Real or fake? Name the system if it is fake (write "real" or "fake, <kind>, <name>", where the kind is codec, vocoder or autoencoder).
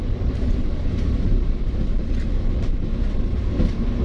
real